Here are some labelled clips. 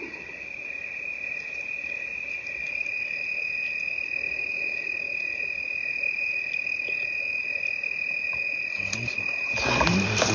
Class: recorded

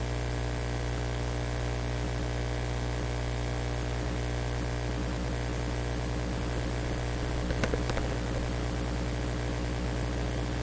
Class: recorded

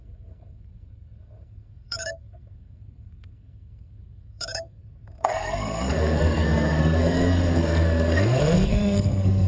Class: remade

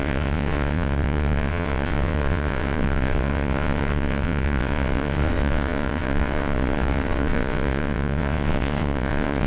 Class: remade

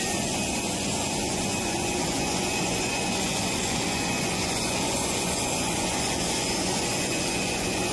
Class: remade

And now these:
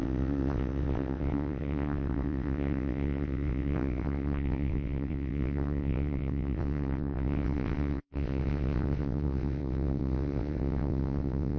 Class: remade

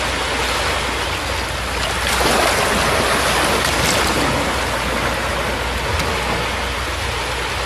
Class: recorded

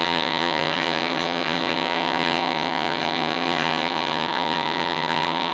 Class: remade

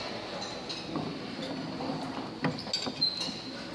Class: recorded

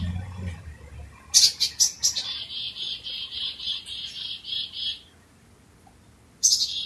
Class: recorded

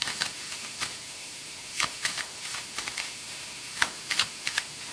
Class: remade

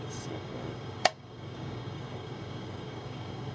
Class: remade